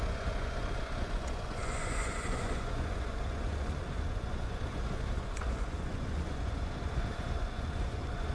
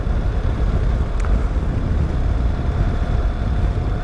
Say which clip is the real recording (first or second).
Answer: second